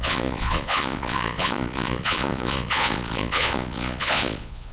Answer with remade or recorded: remade